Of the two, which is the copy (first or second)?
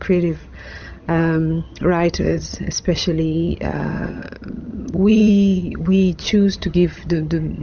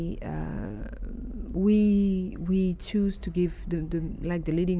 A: first